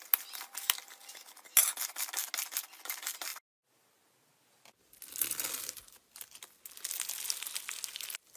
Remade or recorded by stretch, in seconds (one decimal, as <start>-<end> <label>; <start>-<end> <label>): 0.0-8.4 recorded